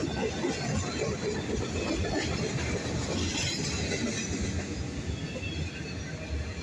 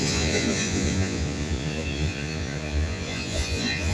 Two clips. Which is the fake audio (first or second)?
second